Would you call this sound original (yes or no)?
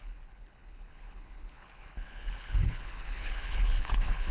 no